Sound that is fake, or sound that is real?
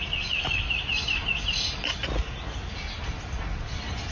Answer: real